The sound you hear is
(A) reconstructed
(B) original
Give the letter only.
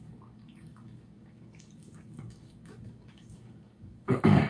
A